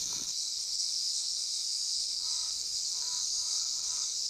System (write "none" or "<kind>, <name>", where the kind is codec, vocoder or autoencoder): codec, SNAC